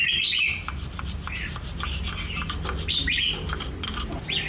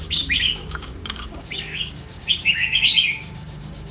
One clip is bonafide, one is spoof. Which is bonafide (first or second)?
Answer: first